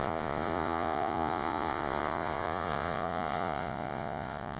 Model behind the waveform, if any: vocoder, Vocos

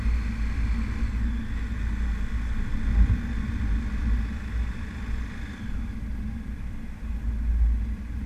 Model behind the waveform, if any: none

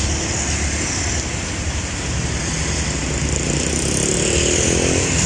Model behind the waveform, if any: none